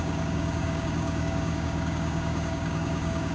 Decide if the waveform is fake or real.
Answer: fake